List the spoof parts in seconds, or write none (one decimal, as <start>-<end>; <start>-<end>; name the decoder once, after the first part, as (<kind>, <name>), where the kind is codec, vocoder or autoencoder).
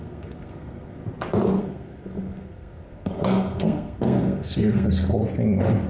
0.0-1.0 (codec, SNAC); 1.6-5.2